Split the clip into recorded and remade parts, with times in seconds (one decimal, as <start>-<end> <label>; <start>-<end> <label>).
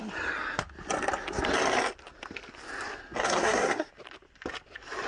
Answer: 0.0-3.2 recorded; 3.2-3.9 remade; 3.9-5.1 recorded